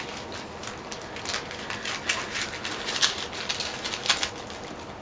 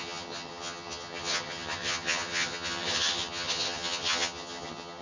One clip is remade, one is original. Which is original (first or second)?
first